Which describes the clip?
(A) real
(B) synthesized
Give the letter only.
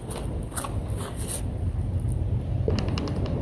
A